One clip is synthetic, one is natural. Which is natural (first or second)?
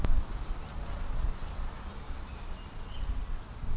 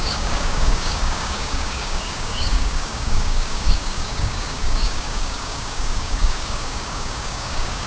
first